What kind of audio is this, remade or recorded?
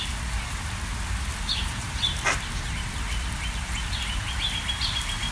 recorded